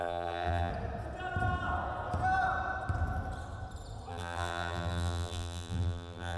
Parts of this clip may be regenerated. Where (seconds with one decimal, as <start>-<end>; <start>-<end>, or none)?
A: 0.0-0.7; 4.1-6.4